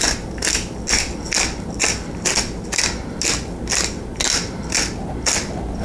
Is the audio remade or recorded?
recorded